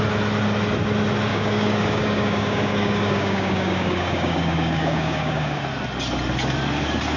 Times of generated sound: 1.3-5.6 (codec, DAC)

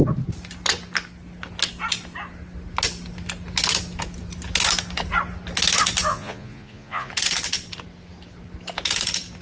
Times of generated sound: 6.1-7.1 (vocoder, Vocos)

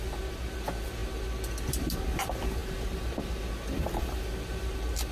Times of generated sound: none